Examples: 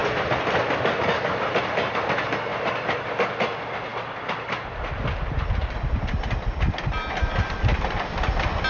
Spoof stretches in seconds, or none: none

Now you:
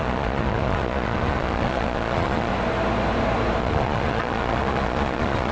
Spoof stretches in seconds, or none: 0.0-2.5 (vocoder, Vocos); 3.6-5.5

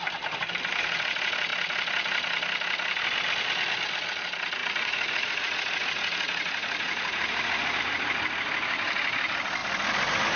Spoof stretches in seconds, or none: 4.6-7.8 (vocoder, Vocos)

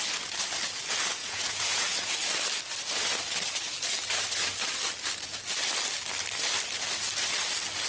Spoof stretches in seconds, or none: 1.2-2.2 (vocoder, Vocos)

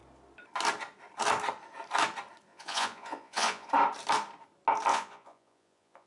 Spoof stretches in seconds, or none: 2.5-3.7 (vocoder, Vocos); 4.9-6.1

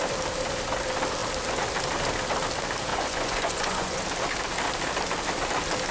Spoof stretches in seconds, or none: 2.9-4.0 (vocoder, Vocos)